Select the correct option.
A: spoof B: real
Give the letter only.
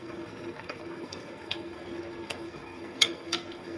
A